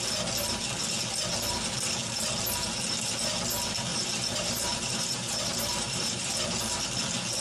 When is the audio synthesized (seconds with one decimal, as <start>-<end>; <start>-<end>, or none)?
3.9-6.3